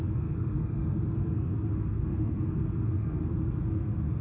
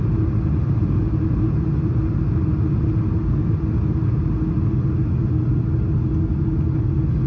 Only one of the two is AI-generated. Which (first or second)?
first